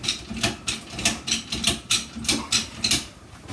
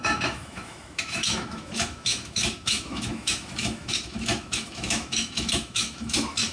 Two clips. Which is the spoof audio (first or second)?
second